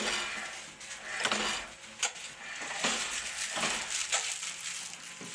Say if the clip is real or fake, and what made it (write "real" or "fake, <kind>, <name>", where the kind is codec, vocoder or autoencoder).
real